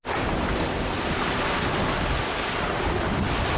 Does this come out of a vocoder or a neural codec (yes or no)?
no